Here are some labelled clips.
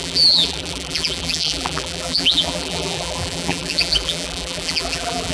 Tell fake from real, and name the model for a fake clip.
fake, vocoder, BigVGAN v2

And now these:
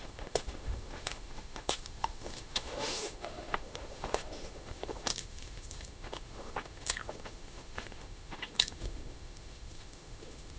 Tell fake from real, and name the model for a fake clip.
fake, autoencoder, DAC-VAE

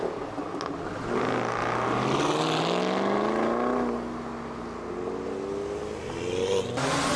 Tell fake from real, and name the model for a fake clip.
real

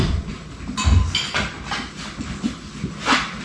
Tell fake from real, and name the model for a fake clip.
real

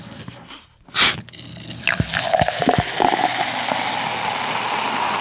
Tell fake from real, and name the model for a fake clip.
real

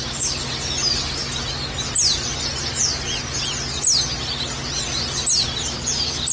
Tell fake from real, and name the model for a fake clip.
real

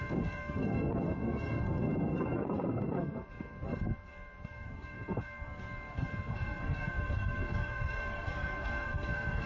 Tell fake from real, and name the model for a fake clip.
fake, codec, SNAC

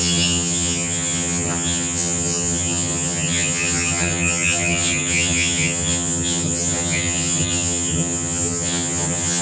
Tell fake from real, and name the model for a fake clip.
fake, vocoder, HiFi-GAN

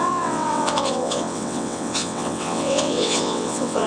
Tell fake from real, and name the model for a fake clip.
fake, vocoder, WaveNeXt